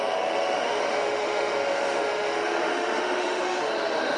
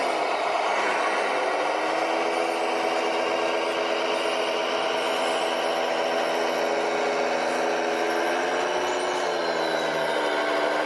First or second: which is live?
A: second